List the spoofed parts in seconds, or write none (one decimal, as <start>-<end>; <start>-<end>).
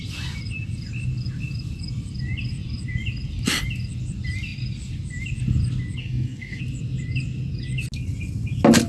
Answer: 6.0-6.6